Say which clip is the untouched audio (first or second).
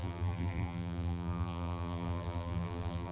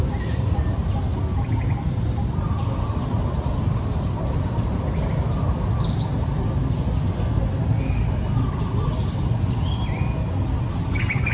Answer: second